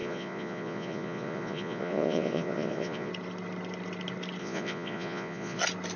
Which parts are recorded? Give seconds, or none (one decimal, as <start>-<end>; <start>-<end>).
3.1-4.4; 5.6-6.0